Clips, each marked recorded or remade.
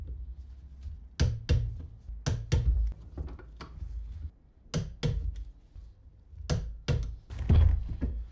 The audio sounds recorded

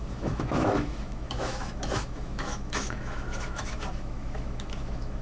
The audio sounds remade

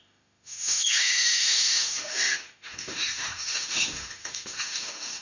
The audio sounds remade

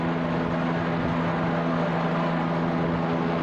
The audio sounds recorded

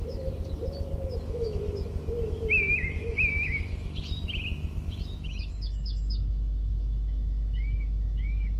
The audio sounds remade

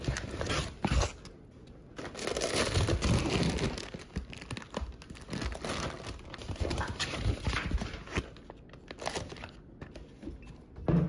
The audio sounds recorded